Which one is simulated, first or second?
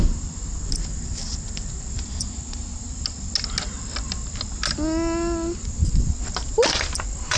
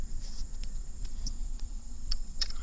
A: second